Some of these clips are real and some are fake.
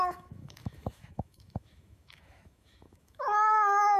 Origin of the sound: fake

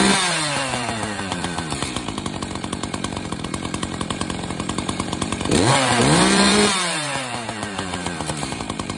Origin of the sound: fake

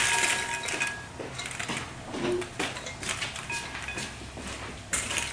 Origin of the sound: real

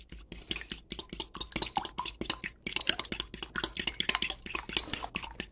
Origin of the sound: real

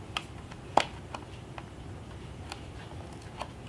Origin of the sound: real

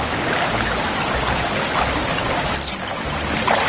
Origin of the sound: real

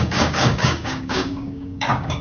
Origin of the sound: fake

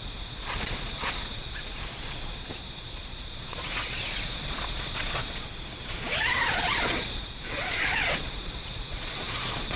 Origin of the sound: fake